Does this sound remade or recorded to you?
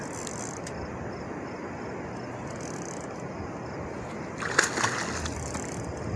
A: recorded